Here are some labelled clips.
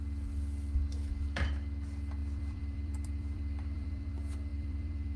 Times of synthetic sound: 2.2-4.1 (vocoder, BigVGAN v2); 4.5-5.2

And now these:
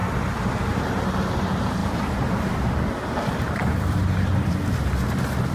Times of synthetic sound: 1.8-4.5 (vocoder, BigVGAN v2)

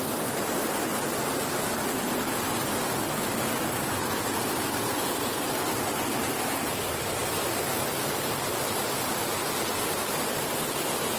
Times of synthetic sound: none